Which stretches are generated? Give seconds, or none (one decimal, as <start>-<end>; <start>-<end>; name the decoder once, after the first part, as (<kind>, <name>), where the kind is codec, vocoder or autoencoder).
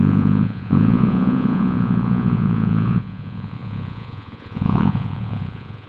0.0-5.9 (vocoder, Vocos)